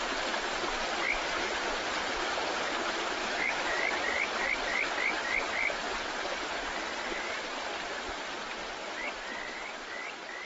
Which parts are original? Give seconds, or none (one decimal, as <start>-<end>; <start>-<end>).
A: 0.0-3.2; 3.8-10.5

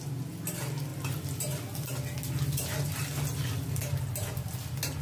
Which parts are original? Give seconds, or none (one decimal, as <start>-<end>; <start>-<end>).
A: 0.0-5.0

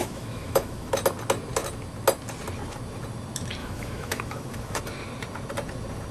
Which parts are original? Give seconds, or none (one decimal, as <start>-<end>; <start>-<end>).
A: 0.9-3.6; 4.8-6.1